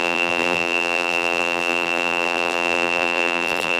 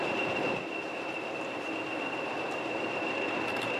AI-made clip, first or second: first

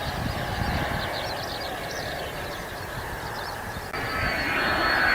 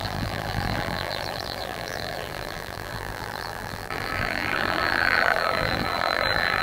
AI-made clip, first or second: second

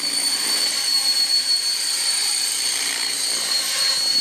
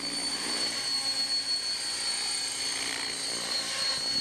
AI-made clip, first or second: first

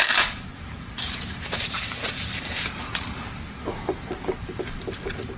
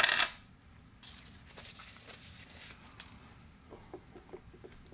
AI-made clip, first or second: first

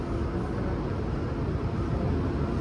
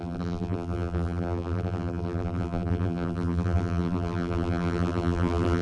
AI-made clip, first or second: second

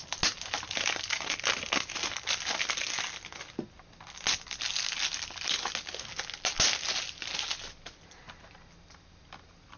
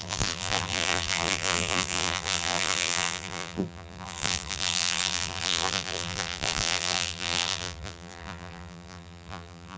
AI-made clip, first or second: second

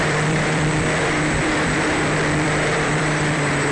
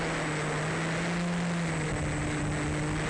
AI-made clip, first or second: first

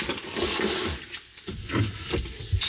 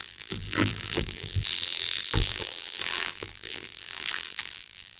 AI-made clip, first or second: second